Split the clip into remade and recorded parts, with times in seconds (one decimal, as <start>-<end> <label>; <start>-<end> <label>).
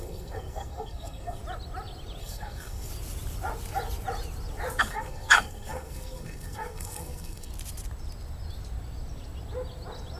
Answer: 0.0-1.4 remade; 1.4-2.2 recorded; 2.2-2.9 remade; 2.9-4.8 recorded; 4.8-7.5 remade; 7.5-10.2 recorded